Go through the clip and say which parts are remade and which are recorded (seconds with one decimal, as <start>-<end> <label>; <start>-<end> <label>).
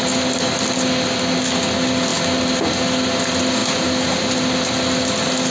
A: 0.0-5.5 recorded